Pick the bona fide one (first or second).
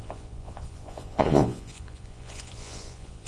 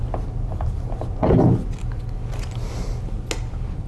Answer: second